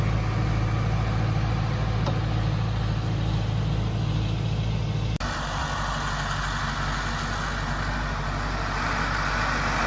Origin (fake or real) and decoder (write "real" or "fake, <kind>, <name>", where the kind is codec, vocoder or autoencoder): real